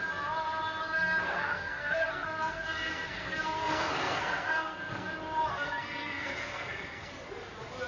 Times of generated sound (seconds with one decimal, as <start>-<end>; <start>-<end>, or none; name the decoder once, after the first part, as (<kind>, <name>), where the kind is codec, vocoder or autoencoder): 1.2-5.1 (codec, SNAC); 5.5-7.1